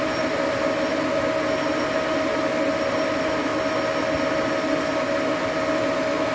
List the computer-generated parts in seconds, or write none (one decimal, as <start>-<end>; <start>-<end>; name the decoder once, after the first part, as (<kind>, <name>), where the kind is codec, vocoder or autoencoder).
none